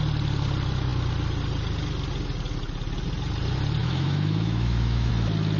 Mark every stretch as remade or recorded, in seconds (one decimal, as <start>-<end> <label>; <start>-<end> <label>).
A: 0.0-3.8 recorded; 3.8-5.1 remade; 5.1-5.6 recorded